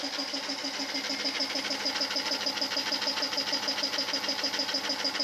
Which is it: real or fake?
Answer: real